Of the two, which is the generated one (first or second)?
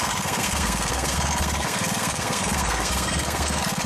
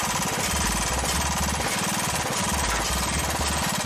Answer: first